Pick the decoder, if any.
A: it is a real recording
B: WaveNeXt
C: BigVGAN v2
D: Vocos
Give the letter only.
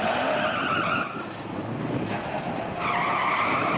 A